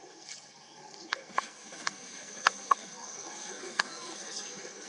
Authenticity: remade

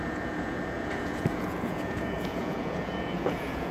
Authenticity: remade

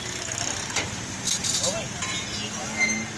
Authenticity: recorded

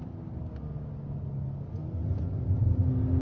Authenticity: recorded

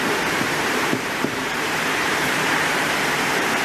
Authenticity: remade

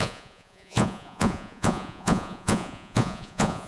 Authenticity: remade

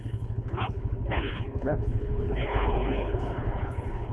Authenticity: remade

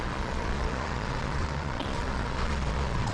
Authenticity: remade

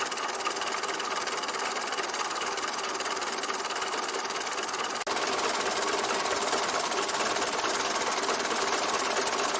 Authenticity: recorded